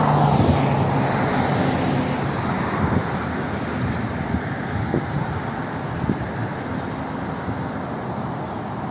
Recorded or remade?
recorded